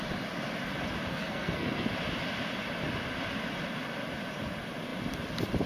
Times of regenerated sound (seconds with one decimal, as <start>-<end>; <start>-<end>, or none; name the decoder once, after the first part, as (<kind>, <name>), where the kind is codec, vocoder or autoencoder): 1.1-1.9 (codec, SNAC)